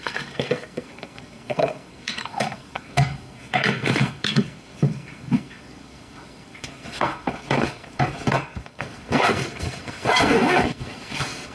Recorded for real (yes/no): no